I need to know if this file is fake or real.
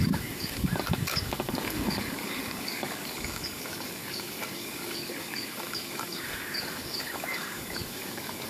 fake